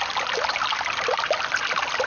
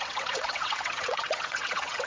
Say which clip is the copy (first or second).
second